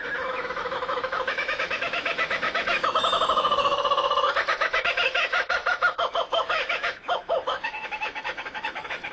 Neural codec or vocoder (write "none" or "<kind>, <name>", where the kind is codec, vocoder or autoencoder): autoencoder, DAC-VAE